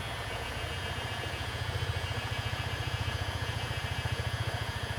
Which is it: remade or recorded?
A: remade